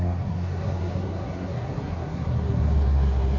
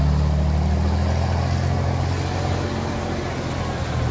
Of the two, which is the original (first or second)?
second